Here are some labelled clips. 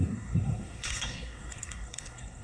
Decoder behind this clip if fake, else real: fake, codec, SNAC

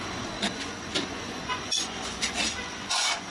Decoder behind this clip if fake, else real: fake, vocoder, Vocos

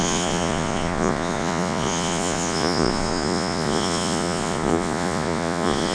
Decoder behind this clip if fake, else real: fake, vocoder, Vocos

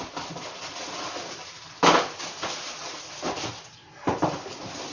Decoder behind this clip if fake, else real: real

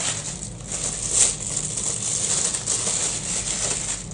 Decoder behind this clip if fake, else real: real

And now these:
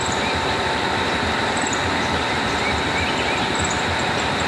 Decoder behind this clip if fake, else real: fake, vocoder, BigVGAN v2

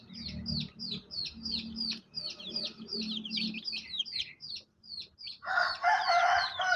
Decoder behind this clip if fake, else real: real